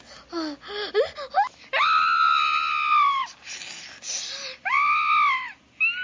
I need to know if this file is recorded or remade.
recorded